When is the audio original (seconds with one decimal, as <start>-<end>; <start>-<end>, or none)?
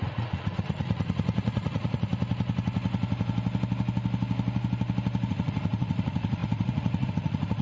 2.1-5.3